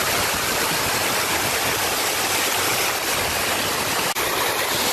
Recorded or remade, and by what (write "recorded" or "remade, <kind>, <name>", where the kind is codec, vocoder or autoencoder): recorded